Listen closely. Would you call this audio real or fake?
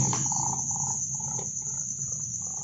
real